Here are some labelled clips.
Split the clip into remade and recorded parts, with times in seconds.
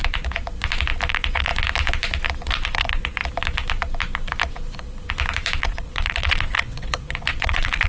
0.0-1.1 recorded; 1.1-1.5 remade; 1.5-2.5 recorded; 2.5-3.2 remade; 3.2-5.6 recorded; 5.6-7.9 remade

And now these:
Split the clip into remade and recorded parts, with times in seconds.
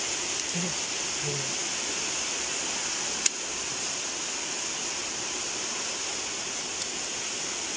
0.0-7.8 recorded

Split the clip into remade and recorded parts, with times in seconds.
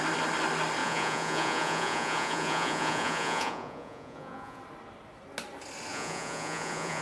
0.0-0.8 recorded; 0.8-4.6 remade; 4.6-5.9 recorded; 5.9-7.0 remade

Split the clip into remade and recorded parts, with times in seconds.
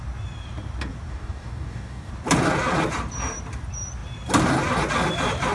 0.0-1.1 recorded; 1.1-2.1 remade; 2.1-5.5 recorded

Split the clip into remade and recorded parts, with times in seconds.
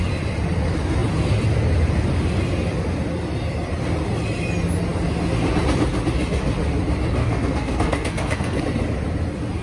0.0-7.2 recorded; 7.2-8.6 remade; 8.6-9.6 recorded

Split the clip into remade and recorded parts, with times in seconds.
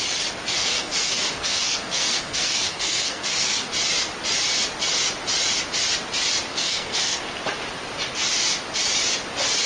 0.0-0.5 recorded; 0.5-3.7 remade; 3.7-6.5 recorded; 6.5-7.2 remade; 7.2-9.7 recorded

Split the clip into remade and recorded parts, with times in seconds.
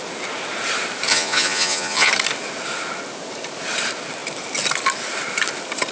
0.0-1.1 recorded; 1.1-2.1 remade; 2.1-5.9 recorded